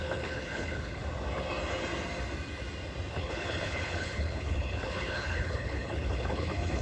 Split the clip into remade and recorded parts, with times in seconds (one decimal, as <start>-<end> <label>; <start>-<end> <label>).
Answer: 0.0-1.0 remade; 1.0-3.1 recorded; 3.1-6.8 remade